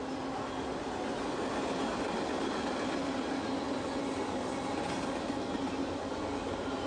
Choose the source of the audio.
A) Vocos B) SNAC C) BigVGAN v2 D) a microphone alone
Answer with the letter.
D